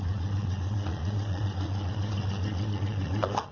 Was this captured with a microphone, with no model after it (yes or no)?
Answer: no